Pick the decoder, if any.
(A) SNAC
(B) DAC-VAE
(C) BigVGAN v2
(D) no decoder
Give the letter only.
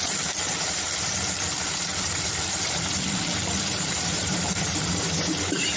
C